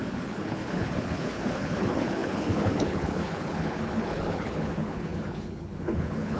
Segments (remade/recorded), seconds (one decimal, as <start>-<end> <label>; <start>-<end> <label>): 0.0-6.4 remade